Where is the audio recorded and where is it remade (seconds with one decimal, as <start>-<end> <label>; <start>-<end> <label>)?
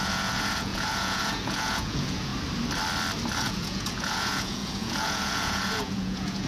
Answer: 0.0-2.3 remade; 2.3-3.4 recorded; 3.4-6.5 remade